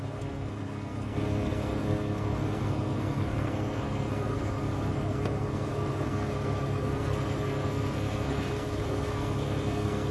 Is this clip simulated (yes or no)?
yes